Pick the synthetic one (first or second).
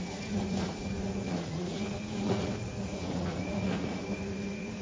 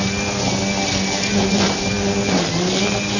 first